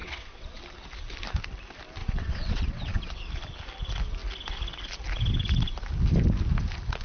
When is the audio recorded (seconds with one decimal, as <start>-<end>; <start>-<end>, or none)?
0.6-2.0; 3.3-7.0